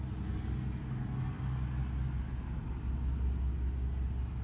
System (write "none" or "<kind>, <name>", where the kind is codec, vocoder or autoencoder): none